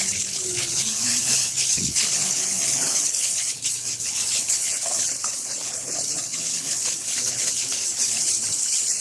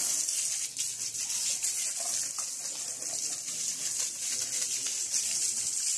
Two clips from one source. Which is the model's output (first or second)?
first